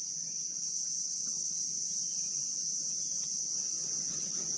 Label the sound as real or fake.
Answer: real